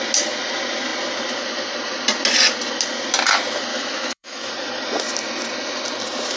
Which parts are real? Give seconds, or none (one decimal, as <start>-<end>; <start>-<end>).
0.0-3.7; 4.5-6.4